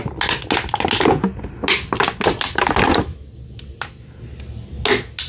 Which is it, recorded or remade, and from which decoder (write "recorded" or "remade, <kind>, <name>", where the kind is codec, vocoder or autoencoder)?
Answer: recorded